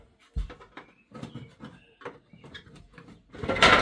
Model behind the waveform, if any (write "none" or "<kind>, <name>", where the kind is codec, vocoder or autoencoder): none